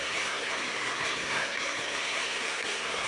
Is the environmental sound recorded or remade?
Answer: remade